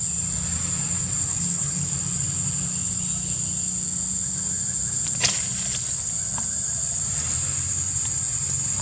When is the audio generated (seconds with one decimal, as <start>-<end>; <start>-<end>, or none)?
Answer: 1.3-1.9